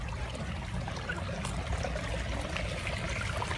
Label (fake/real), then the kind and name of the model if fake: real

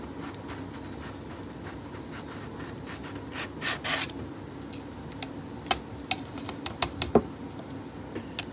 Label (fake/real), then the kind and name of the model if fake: real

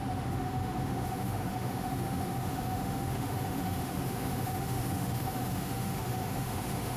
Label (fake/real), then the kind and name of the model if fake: fake, autoencoder, DAC-VAE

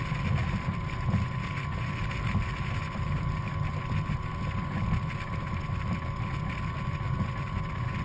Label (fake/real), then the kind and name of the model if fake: fake, vocoder, BigVGAN v2